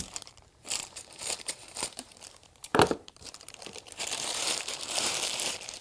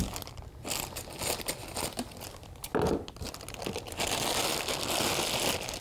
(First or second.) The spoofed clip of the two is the first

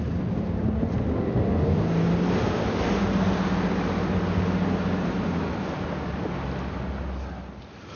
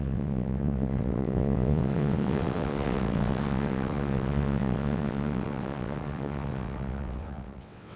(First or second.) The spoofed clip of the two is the second